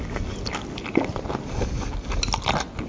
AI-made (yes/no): no